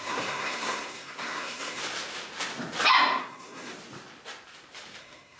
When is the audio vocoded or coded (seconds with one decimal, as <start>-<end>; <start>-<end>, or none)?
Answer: 0.0-1.8; 3.2-3.7; 5.0-5.4